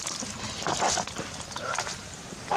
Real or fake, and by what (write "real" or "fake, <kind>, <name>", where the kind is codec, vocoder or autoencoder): real